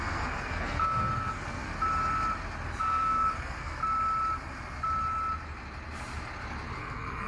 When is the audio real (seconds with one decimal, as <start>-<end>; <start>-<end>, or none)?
1.7-2.8; 3.8-6.8